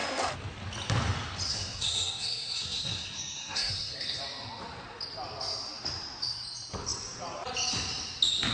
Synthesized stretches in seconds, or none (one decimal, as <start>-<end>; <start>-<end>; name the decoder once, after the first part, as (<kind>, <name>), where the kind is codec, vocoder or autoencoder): 1.5-4.2 (codec, SNAC)